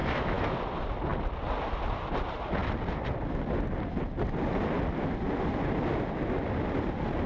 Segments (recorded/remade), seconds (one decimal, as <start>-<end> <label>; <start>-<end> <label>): 0.0-0.5 remade; 0.5-7.3 recorded